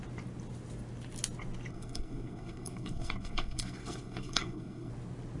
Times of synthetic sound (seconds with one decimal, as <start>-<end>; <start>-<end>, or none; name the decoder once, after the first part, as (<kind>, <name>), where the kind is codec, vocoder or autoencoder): 1.7-4.9 (codec, SNAC)